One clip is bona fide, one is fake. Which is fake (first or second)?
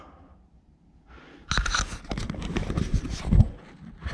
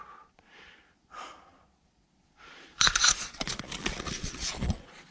second